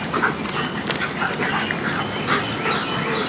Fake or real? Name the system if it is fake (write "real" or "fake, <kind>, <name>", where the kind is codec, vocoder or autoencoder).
real